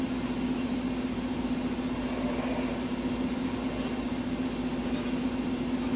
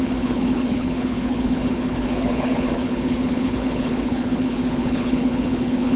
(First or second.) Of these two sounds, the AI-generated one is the second